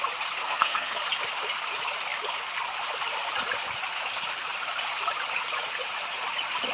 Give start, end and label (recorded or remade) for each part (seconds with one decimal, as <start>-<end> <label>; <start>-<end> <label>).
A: 0.0-0.4 recorded; 0.4-1.0 remade; 1.0-6.7 recorded